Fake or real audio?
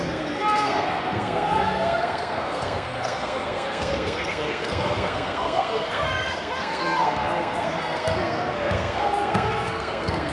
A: fake